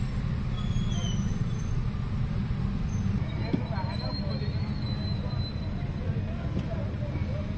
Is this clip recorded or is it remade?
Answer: recorded